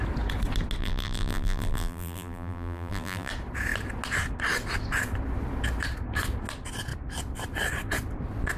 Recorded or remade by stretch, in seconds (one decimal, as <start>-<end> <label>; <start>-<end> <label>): 0.0-0.8 recorded; 0.8-3.3 remade; 3.3-8.6 recorded